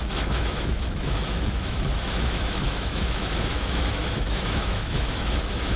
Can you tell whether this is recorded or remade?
remade